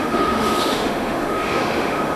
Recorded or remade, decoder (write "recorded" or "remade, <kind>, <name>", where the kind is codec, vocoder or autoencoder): remade, autoencoder, DAC-VAE